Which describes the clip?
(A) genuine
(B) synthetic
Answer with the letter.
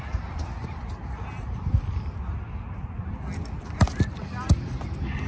A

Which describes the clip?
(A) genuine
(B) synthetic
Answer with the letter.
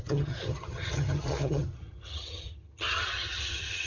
B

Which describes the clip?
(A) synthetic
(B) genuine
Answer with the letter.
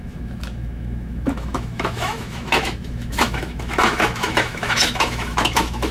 A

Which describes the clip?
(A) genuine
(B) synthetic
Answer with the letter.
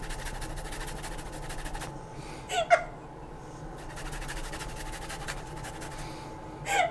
A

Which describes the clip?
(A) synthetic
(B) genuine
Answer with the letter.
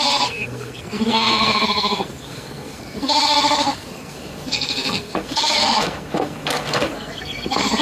A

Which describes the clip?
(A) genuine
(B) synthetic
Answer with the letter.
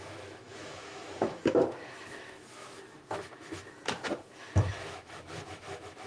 B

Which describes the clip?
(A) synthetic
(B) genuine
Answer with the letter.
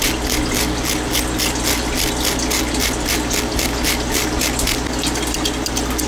B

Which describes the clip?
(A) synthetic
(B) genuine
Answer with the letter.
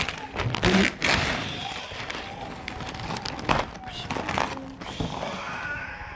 B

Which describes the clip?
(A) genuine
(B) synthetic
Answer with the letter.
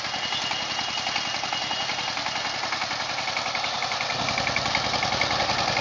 A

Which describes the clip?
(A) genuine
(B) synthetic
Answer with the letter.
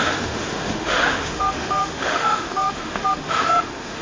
B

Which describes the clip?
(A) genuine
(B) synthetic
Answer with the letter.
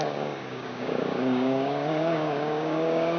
B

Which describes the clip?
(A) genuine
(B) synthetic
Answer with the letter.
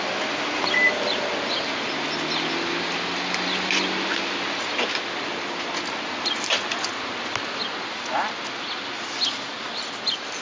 A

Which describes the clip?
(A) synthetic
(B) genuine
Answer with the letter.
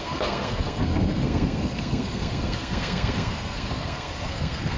A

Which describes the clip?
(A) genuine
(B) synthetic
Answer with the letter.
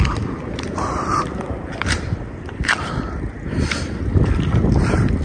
B